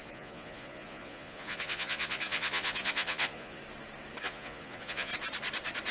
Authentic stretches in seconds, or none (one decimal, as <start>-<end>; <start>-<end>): 3.6-4.2; 5.1-5.9